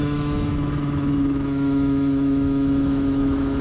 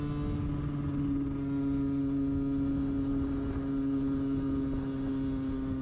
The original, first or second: second